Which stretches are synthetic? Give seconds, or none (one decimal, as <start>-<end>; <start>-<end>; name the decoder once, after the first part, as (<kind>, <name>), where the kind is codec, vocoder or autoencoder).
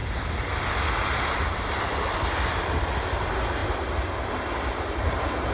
none